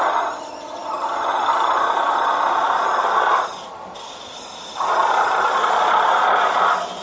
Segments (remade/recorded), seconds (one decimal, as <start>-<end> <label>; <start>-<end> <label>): 0.0-7.0 recorded